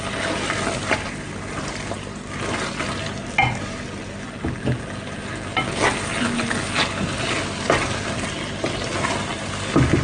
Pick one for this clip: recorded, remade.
recorded